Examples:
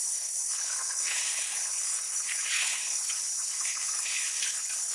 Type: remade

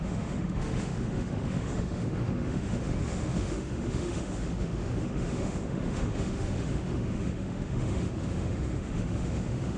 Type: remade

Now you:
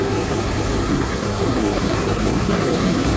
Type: remade